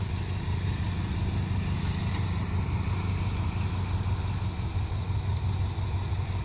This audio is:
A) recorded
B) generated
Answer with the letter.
A